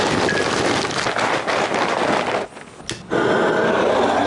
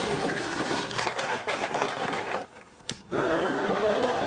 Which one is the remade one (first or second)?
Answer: second